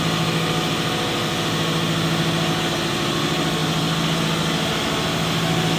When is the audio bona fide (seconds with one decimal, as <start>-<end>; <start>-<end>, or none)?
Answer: 0.0-5.8